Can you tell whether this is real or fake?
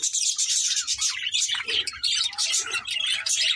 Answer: fake